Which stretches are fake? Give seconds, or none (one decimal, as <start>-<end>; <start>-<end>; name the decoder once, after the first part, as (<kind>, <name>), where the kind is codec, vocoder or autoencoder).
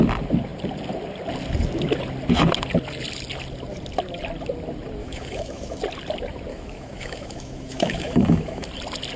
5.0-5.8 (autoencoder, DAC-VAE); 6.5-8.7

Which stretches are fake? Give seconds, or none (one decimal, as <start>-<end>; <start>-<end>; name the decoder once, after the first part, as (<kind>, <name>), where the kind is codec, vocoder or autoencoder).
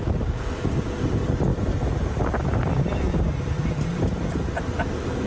none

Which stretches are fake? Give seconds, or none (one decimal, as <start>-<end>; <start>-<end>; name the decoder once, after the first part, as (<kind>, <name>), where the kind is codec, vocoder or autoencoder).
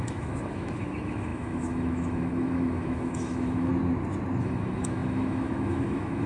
0.0-3.7 (autoencoder, DAC-VAE); 4.4-6.3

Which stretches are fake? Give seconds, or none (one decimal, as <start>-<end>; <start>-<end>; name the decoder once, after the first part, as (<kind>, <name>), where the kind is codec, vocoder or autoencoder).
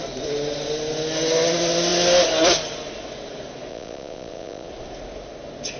3.7-4.7 (vocoder, Vocos)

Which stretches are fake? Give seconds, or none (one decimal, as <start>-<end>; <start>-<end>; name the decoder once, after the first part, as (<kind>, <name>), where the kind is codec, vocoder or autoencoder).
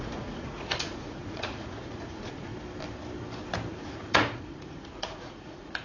0.0-2.5 (vocoder, Vocos); 3.7-5.8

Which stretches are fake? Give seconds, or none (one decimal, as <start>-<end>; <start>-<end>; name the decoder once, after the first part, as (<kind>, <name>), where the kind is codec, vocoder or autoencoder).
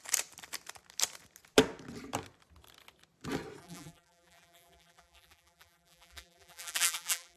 3.6-7.4 (vocoder, BigVGAN v2)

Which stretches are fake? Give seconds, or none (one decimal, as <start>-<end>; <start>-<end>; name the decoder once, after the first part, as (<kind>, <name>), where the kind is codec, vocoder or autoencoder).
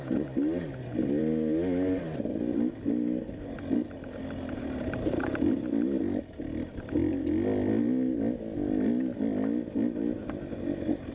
none